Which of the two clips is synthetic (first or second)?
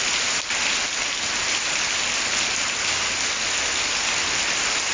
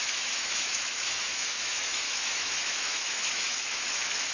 second